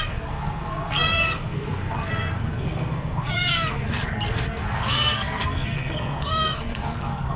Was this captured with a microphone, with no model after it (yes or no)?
no